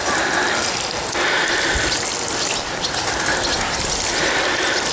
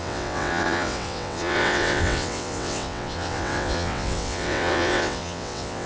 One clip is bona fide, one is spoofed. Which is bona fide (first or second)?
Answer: first